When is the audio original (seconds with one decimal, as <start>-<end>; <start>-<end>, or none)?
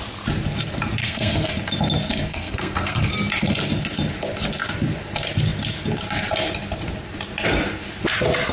0.0-1.0; 1.5-2.3; 3.1-8.5